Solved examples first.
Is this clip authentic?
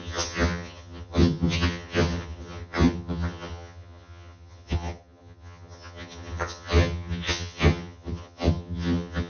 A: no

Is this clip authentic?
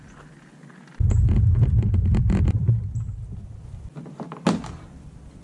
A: yes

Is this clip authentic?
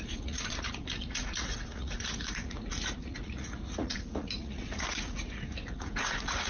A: no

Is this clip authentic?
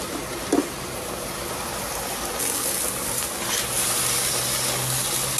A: yes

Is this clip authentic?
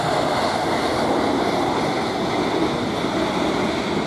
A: yes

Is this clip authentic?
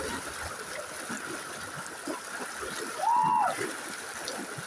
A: yes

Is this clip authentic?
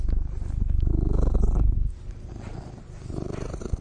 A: yes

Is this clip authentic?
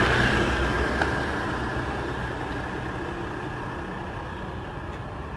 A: yes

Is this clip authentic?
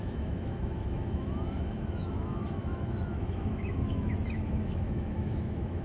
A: no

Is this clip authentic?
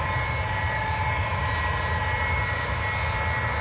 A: yes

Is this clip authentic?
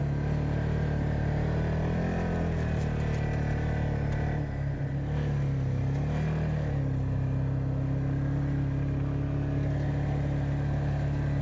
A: yes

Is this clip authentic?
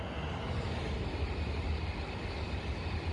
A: yes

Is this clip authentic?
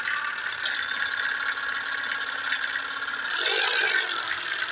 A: yes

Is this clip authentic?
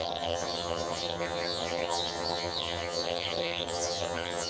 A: no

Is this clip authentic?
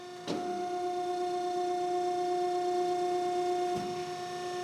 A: yes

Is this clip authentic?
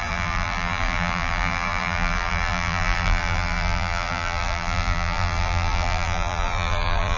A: no